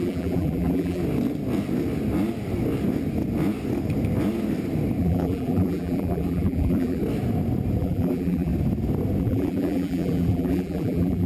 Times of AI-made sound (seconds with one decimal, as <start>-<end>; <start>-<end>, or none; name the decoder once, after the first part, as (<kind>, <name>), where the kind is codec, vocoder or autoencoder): 0.0-1.0 (vocoder, BigVGAN v2); 5.0-7.0; 7.8-8.5; 9.2-11.3